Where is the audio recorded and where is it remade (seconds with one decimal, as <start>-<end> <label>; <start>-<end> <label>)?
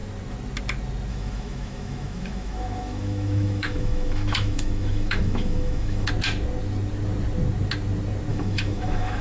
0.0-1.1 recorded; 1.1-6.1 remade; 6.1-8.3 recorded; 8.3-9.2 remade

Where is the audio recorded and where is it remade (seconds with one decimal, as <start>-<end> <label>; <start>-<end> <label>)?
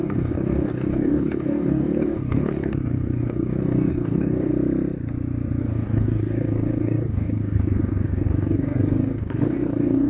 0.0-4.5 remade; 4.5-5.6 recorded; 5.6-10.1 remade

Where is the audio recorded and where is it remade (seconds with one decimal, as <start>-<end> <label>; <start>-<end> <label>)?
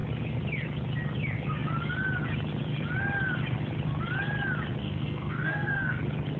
0.0-4.8 recorded; 4.8-6.0 remade; 6.0-6.4 recorded